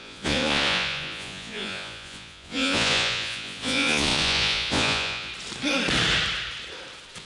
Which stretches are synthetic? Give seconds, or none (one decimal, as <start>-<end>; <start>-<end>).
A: 0.0-5.3